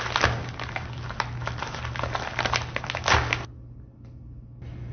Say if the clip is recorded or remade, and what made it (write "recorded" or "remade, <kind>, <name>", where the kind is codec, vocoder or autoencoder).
recorded